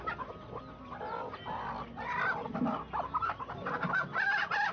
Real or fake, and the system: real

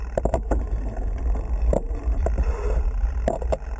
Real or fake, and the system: fake, vocoder, BigVGAN v2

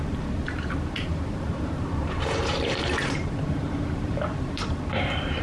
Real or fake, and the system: fake, vocoder, BigVGAN v2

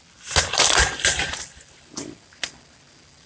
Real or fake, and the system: real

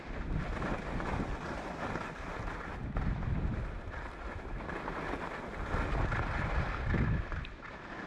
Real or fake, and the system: real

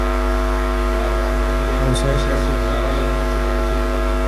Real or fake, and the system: fake, codec, DAC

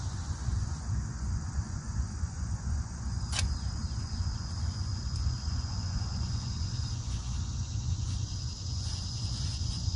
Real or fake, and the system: fake, vocoder, Vocos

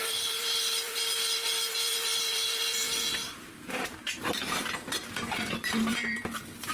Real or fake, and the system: fake, vocoder, BigVGAN v2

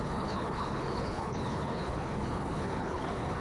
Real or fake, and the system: fake, codec, HILCodec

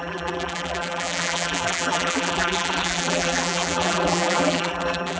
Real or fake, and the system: fake, vocoder, BigVGAN v2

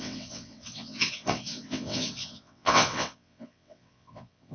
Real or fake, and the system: fake, vocoder, WaveNeXt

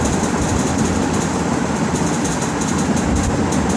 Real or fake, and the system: real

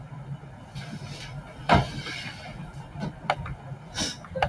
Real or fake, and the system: real